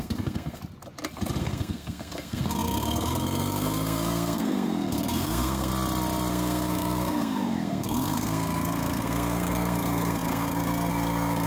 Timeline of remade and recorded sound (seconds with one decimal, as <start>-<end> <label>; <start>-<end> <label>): 0.0-0.6 remade; 0.6-1.4 recorded; 1.4-5.7 remade; 5.7-6.3 recorded; 6.3-11.5 remade